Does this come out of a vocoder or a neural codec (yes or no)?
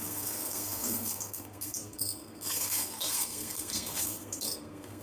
yes